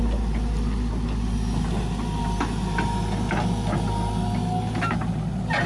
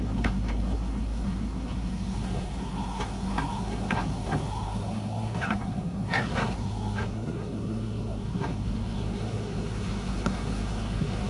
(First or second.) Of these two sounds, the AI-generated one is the second